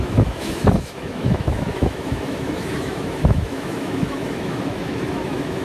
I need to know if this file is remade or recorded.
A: remade